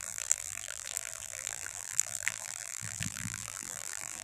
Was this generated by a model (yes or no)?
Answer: yes